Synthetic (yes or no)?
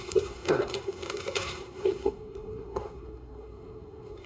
yes